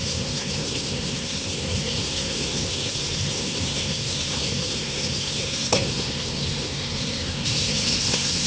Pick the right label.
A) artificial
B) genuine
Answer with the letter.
A